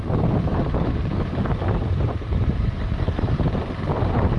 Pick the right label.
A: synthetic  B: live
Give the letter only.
A